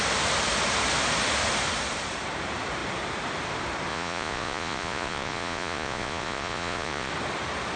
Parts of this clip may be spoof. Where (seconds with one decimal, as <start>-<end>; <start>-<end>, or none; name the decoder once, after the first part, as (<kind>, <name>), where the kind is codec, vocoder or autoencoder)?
3.9-7.1 (vocoder, Vocos)